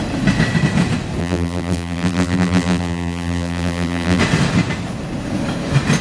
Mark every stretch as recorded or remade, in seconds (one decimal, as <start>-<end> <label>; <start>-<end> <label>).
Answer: 0.0-1.2 recorded; 1.2-4.2 remade; 4.2-6.0 recorded